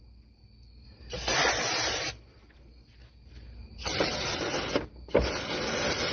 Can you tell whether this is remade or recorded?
recorded